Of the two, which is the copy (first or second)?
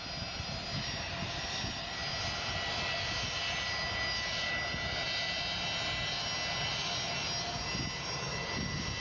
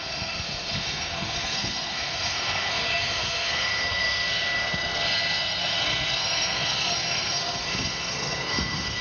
second